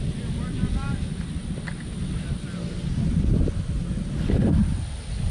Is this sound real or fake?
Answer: real